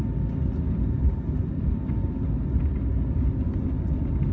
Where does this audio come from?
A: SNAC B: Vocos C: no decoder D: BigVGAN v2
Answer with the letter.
C